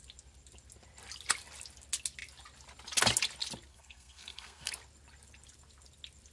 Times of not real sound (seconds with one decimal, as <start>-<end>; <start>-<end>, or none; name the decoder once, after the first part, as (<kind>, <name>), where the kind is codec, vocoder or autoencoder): 3.7-4.7 (codec, SNAC)

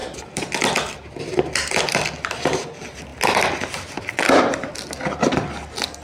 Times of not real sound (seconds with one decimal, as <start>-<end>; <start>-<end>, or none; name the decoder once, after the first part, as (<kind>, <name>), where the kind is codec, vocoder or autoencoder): none

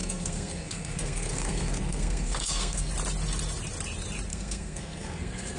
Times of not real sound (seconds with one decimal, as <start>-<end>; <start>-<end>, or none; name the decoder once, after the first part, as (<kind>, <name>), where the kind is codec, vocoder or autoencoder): 0.0-2.9 (codec, SNAC); 4.3-5.6

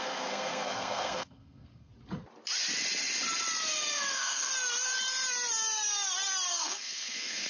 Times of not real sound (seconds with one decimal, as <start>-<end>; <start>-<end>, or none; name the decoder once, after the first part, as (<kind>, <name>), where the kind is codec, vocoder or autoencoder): 0.0-1.9 (codec, SNAC); 3.7-4.5; 6.5-7.5